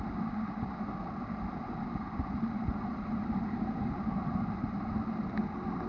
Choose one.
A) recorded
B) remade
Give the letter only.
A